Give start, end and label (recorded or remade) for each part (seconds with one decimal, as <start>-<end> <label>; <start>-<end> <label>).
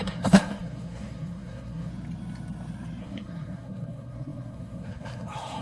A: 0.0-1.9 remade; 1.9-3.0 recorded; 3.0-5.6 remade